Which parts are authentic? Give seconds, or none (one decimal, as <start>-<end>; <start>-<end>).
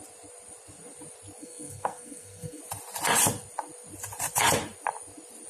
0.0-1.4; 2.6-5.5